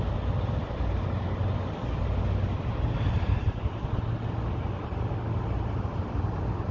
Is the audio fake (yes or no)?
no